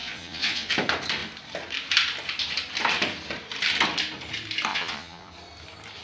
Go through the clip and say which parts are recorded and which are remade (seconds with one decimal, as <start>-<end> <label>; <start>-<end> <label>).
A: 0.0-0.7 remade; 0.7-4.7 recorded; 4.7-5.3 remade; 5.3-6.0 recorded